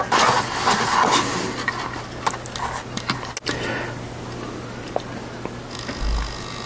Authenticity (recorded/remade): recorded